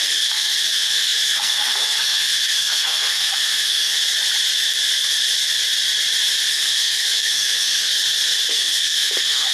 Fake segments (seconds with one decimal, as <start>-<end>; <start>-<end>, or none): 0.0-4.0; 6.5-7.9; 8.5-9.5